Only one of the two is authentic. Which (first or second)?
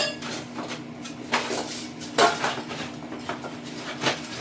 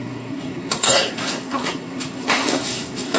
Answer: first